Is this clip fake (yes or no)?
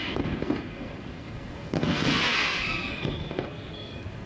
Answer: yes